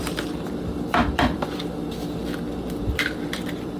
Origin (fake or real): fake